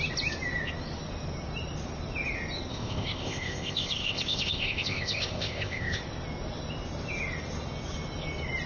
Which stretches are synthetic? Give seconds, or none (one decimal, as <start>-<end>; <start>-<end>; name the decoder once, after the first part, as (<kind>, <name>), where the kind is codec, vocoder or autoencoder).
2.7-6.0 (codec, ZipCodec)